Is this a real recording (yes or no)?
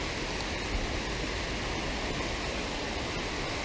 yes